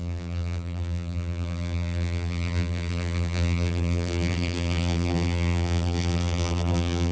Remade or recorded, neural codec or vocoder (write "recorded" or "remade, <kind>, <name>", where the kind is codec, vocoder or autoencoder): remade, vocoder, BigVGAN v2